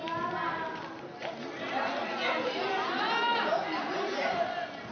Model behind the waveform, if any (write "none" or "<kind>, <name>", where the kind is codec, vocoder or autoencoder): none